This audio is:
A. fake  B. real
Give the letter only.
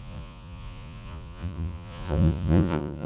A